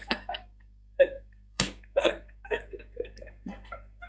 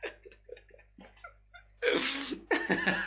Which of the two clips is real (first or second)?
second